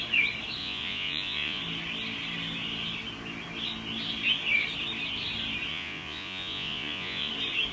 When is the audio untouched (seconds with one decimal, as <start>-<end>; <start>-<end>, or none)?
0.0-0.6; 1.6-5.7; 7.3-7.7